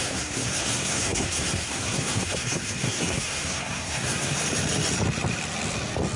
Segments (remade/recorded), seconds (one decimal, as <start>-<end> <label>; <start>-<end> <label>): 0.0-4.4 remade; 4.4-6.2 recorded